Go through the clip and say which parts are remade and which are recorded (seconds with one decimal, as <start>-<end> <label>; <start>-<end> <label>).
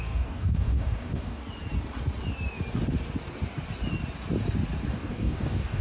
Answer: 0.0-1.4 remade; 1.4-4.9 recorded; 4.9-5.8 remade